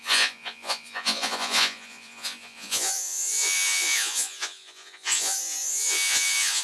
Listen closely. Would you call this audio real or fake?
fake